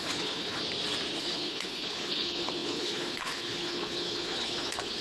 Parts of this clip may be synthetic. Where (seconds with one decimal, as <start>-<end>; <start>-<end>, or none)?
0.0-0.6; 1.2-5.0